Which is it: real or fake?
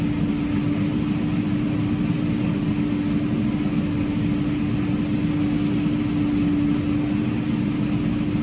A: real